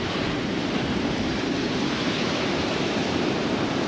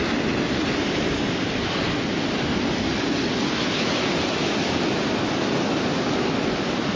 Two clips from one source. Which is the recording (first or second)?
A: second